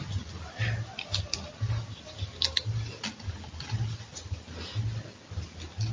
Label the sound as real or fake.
real